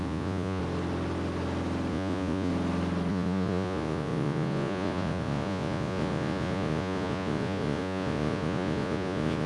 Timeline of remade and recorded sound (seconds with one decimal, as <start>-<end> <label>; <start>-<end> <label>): 0.0-0.6 remade; 0.6-1.9 recorded; 1.9-2.5 remade; 2.5-3.1 recorded; 3.1-9.5 remade